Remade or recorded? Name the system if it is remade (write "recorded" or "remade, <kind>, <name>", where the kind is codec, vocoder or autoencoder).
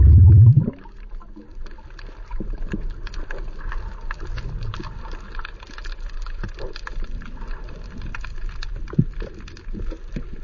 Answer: recorded